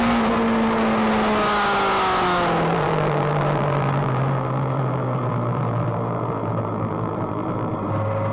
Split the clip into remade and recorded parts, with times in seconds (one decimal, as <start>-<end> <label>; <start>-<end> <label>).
0.0-2.7 recorded; 2.7-7.7 remade; 7.7-8.3 recorded